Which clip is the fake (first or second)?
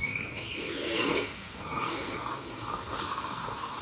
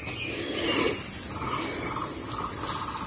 first